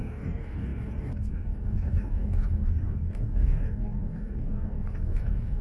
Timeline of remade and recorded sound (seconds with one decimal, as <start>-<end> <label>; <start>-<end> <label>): 0.0-5.6 remade